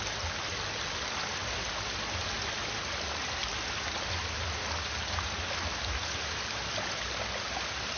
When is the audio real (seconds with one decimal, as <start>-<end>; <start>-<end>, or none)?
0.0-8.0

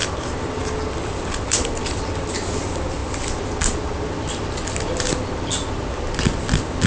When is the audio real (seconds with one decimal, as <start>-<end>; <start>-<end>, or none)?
0.0-6.9

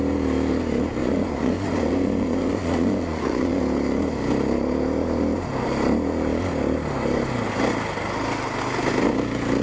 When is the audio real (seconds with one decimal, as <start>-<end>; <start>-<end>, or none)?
0.0-1.0; 3.6-9.6

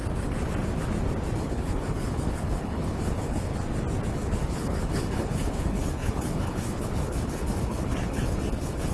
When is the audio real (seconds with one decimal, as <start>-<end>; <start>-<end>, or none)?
0.0-1.4; 3.5-4.1

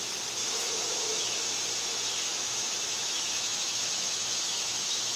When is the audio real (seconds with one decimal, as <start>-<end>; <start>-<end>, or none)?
0.0-0.4; 1.3-2.3

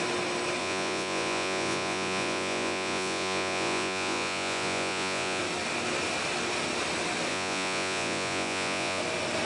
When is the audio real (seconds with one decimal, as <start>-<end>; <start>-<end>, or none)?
0.0-0.6; 5.4-7.3; 9.0-9.5